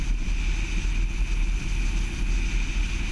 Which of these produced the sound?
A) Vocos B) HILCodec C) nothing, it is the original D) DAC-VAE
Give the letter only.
C